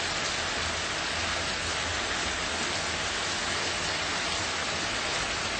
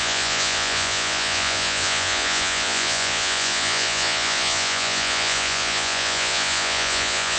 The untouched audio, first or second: first